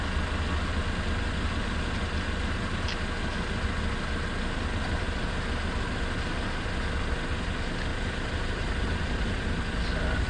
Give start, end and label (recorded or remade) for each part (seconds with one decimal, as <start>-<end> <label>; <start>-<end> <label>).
0.0-7.9 recorded; 7.9-9.5 remade; 9.5-10.3 recorded